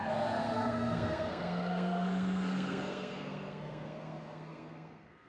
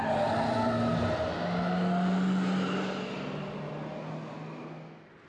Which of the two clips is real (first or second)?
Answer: second